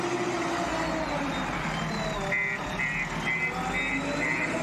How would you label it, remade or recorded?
recorded